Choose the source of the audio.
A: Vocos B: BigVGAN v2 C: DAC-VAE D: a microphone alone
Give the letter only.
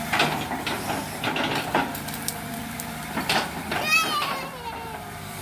B